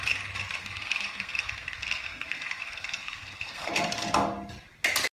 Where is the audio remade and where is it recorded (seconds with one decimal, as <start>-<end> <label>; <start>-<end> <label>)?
0.0-0.6 recorded; 0.6-3.7 remade; 3.7-5.2 recorded